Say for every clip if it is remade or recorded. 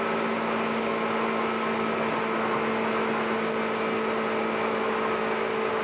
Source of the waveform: recorded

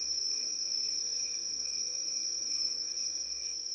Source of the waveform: remade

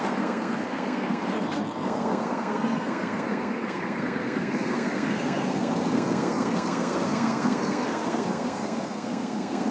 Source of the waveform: remade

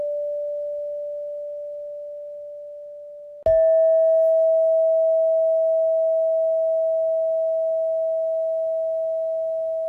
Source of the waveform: recorded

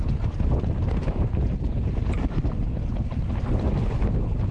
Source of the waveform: recorded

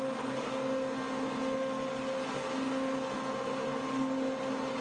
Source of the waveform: recorded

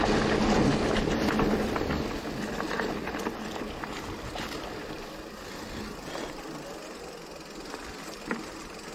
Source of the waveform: recorded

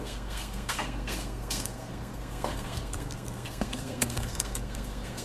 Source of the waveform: remade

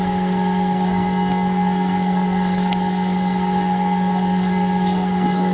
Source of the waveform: remade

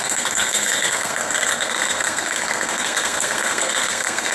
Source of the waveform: remade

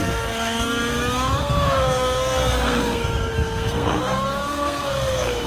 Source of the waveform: remade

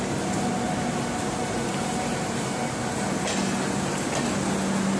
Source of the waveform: recorded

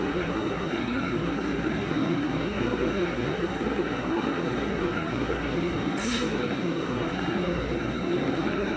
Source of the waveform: remade